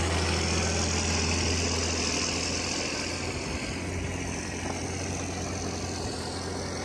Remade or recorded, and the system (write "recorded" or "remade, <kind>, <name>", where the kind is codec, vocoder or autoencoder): recorded